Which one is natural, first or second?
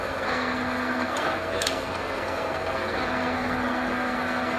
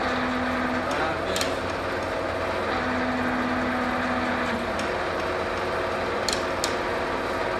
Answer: second